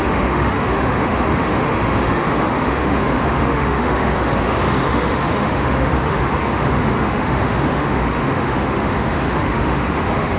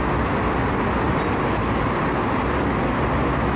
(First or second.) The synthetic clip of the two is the first